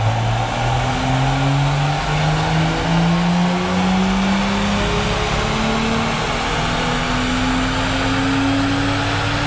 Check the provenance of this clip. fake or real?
real